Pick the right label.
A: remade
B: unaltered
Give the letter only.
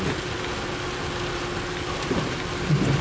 B